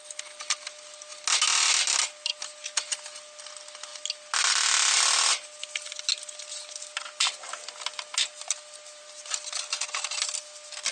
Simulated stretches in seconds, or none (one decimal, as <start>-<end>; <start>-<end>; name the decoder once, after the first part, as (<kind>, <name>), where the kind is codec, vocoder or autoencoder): none